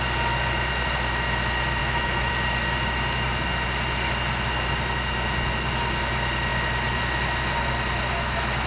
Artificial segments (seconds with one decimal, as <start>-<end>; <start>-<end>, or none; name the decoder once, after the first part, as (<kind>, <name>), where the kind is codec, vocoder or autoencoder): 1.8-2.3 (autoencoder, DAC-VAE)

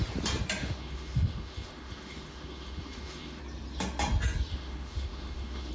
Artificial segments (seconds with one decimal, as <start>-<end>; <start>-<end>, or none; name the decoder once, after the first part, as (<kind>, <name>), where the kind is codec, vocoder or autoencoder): 0.6-3.4 (autoencoder, DAC-VAE); 4.5-5.7

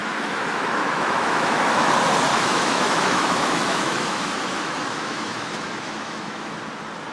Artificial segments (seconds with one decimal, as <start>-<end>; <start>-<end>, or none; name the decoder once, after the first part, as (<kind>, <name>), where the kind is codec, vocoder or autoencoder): 0.0-1.9 (autoencoder, DAC-VAE); 2.3-6.6

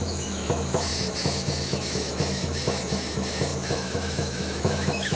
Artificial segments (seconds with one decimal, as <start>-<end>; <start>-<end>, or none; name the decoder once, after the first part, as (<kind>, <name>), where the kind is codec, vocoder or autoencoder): 0.0-5.2 (autoencoder, DAC-VAE)